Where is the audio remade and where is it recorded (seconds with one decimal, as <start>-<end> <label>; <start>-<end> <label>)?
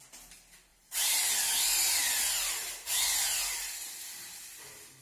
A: 0.0-0.7 recorded; 0.7-2.0 remade; 2.0-5.0 recorded